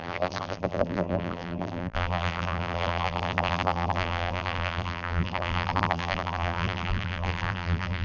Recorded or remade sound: remade